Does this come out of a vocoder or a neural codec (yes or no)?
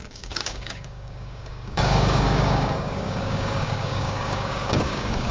yes